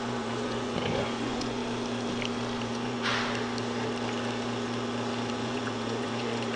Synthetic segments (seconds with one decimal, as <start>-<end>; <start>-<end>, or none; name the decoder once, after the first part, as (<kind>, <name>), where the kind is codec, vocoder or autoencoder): 0.0-1.6 (vocoder, Vocos); 2.6-3.1; 5.3-6.6